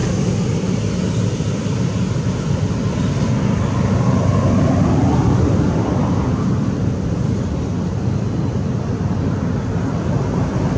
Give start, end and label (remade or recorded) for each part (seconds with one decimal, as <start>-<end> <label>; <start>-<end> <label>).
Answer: 0.0-10.8 recorded